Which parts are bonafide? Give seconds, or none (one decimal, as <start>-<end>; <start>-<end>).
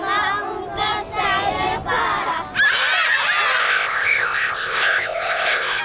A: 0.0-3.6